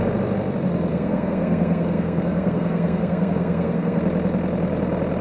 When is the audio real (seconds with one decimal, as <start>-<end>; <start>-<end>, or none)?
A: 0.0-0.9; 4.0-5.2